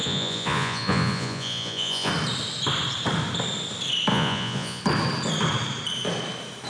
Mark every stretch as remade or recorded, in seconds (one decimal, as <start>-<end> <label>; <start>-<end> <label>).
0.0-2.1 remade; 2.1-4.1 recorded; 4.1-4.8 remade; 4.8-6.7 recorded